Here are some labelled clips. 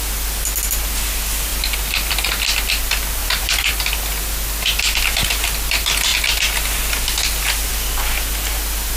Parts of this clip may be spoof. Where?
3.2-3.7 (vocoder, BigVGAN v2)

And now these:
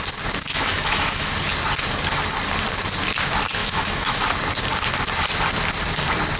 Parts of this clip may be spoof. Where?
0.4-1.3 (autoencoder, DAC-VAE); 3.6-4.2

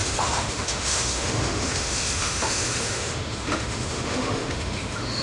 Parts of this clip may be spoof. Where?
0.0-5.2 (autoencoder, DAC-VAE)